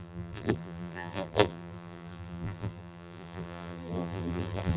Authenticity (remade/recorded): remade